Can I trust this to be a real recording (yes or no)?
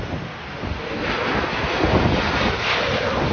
yes